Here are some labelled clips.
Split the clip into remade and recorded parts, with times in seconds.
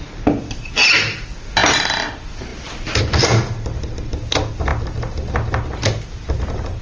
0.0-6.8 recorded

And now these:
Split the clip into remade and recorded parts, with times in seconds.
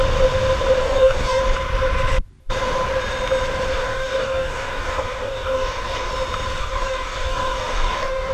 0.0-0.8 recorded; 0.8-1.4 remade; 1.4-3.7 recorded; 3.7-6.1 remade; 6.1-6.6 recorded; 6.6-8.3 remade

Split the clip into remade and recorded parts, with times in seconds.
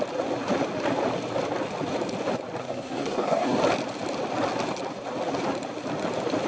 0.0-2.6 recorded; 2.6-3.6 remade; 3.6-6.5 recorded